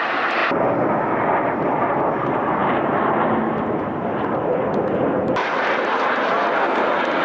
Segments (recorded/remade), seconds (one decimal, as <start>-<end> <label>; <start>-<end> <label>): 0.0-7.2 recorded